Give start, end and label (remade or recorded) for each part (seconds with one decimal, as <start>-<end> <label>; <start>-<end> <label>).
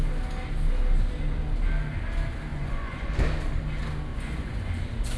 0.0-2.5 recorded; 2.5-3.1 remade; 3.1-4.1 recorded; 4.1-4.7 remade; 4.7-5.2 recorded